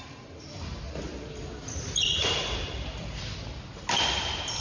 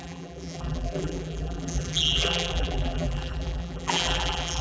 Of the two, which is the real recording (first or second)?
first